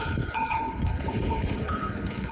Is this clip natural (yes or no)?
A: no